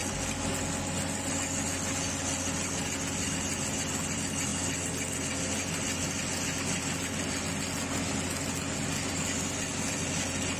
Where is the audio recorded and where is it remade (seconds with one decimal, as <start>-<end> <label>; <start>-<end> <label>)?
0.0-10.6 recorded